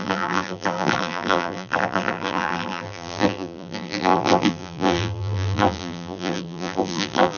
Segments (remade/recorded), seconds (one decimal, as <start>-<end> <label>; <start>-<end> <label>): 0.0-7.4 remade